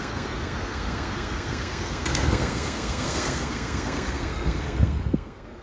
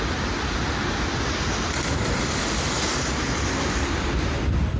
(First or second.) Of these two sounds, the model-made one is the first